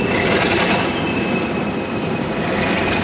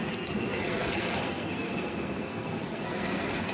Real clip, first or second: first